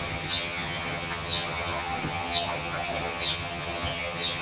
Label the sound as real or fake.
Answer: fake